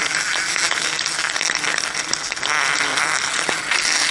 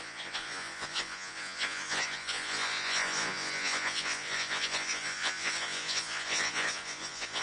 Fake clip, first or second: second